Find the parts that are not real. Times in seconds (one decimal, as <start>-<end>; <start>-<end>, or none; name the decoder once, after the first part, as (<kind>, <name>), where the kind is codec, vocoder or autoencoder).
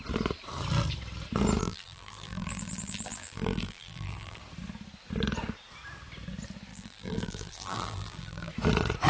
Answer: 1.6-4.4 (vocoder, BigVGAN v2); 6.7-8.5